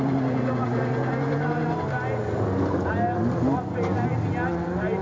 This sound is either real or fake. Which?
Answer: real